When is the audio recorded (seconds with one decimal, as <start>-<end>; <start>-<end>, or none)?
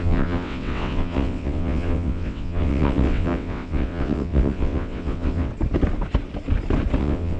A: 5.5-7.0